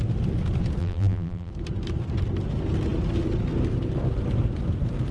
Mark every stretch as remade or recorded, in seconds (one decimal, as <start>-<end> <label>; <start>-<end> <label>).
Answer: 0.0-0.8 recorded; 0.8-1.5 remade; 1.5-5.1 recorded